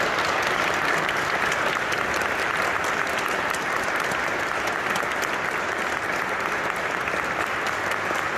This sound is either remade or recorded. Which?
recorded